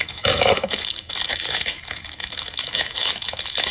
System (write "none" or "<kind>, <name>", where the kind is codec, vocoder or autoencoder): autoencoder, DAC-VAE